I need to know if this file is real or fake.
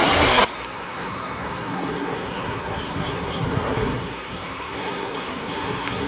fake